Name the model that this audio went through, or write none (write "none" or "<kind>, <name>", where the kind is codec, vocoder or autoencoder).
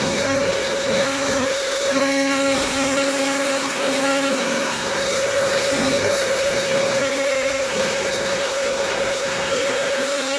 codec, SNAC